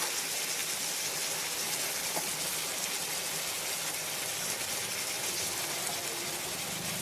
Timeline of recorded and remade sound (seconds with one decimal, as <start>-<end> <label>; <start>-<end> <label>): 0.0-7.0 recorded